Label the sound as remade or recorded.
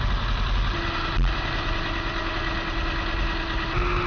recorded